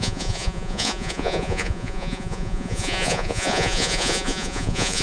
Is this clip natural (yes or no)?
no